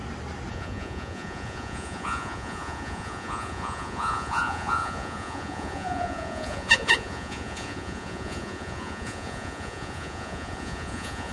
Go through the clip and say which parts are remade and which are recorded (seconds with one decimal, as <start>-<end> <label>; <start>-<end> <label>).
0.0-0.5 recorded; 0.5-11.3 remade